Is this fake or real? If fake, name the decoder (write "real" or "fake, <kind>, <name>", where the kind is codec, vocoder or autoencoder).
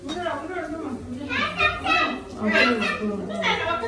real